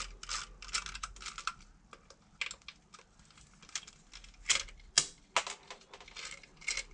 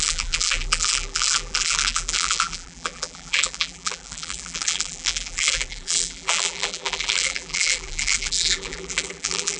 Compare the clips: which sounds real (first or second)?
first